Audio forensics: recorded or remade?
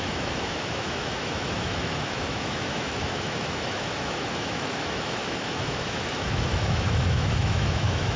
remade